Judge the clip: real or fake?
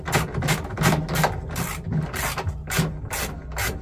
real